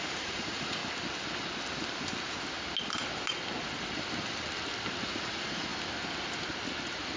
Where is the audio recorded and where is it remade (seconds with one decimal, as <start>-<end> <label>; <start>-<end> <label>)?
0.0-0.8 remade; 0.8-5.1 recorded; 5.1-5.7 remade; 5.7-7.2 recorded